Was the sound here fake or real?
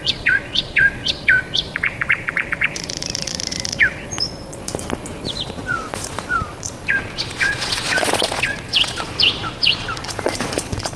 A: fake